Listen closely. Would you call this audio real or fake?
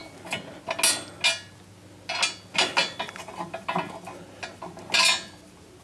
real